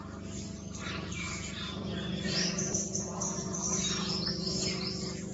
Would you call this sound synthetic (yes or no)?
no